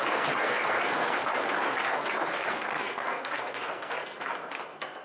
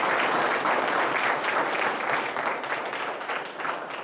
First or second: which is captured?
second